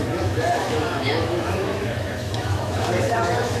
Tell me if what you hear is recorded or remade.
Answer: remade